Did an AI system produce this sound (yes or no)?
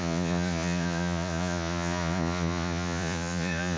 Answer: yes